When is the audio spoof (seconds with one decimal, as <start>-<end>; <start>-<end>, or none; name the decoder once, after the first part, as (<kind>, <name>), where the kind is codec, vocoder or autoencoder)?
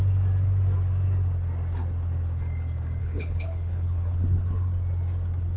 3.0-4.2 (codec, HILCodec)